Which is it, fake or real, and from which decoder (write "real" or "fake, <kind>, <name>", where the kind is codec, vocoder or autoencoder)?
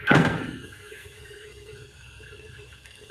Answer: fake, codec, SNAC